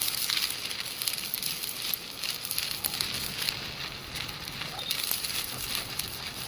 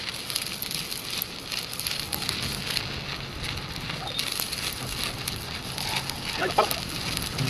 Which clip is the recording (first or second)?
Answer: second